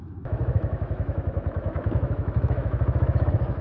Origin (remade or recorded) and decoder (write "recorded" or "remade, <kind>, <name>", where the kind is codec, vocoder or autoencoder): remade, autoencoder, DAC-VAE